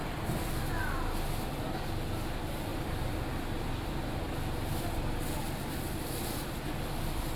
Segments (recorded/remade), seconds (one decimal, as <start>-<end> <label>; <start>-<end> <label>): 0.0-0.5 remade; 0.5-2.7 recorded; 2.7-4.3 remade; 4.3-7.4 recorded